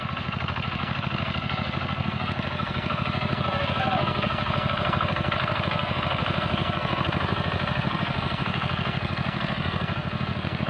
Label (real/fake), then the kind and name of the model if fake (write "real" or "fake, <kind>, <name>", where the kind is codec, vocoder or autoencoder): fake, codec, SNAC